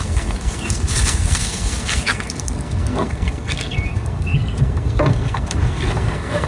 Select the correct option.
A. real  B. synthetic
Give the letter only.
B